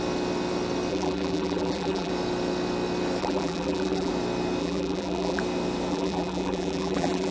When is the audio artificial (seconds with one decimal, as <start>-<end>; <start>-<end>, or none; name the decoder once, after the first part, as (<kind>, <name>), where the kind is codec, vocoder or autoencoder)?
0.9-2.1 (vocoder, BigVGAN v2); 3.2-4.1; 4.6-5.4; 5.9-7.3